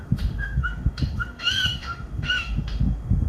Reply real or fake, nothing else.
fake